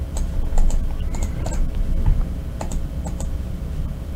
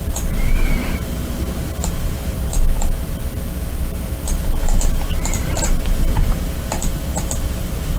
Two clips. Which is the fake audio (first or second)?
second